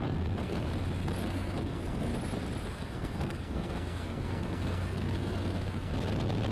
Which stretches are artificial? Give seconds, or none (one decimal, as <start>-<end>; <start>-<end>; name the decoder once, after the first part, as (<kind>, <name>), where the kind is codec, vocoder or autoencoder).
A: 0.0-0.7 (codec, SNAC); 1.2-2.1; 2.7-5.9